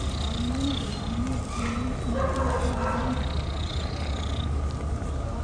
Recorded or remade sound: recorded